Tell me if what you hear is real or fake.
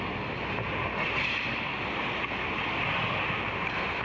real